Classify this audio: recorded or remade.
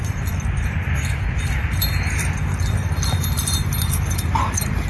recorded